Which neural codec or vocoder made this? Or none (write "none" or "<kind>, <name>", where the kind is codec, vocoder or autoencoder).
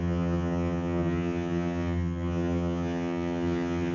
vocoder, HiFi-GAN